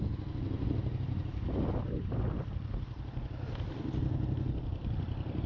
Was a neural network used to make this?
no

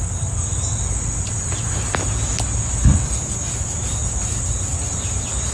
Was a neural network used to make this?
no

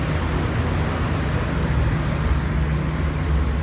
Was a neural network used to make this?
no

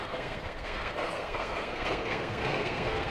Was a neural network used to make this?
yes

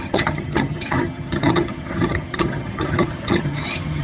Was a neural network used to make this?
yes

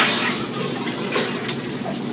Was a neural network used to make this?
no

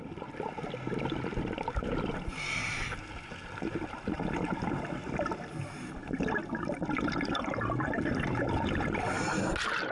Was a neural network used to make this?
no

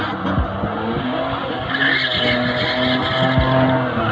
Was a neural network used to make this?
no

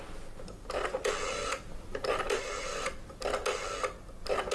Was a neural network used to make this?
no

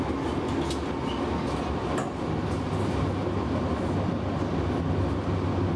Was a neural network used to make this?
no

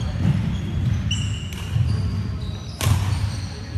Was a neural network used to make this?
no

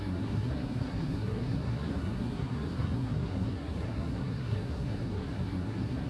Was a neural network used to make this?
yes